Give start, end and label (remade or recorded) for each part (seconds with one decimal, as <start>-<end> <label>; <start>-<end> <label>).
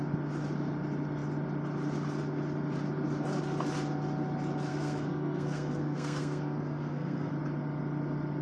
0.0-4.7 recorded; 4.7-7.3 remade; 7.3-8.4 recorded